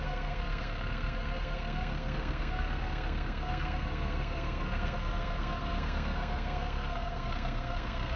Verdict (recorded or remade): remade